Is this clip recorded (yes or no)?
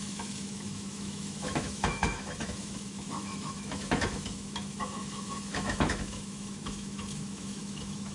no